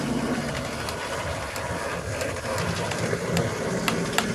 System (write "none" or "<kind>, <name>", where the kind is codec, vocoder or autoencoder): none